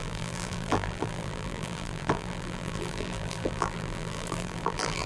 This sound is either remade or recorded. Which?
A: remade